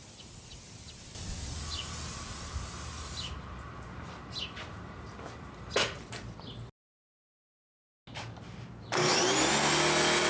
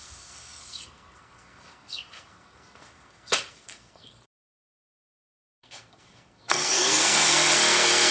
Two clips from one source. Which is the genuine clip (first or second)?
first